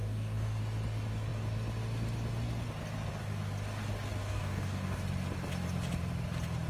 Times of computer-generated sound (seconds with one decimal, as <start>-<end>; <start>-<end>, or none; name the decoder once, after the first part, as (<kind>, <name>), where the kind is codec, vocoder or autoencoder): 0.0-0.6 (codec, DAC); 4.2-5.0